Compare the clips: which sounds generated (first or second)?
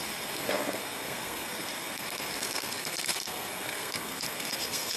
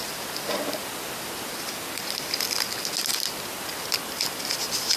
first